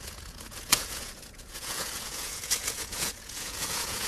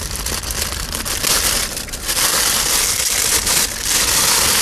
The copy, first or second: first